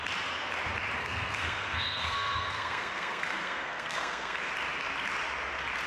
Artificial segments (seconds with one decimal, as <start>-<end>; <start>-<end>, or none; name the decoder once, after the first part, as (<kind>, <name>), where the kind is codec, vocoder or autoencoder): 1.0-4.5 (codec, SNAC)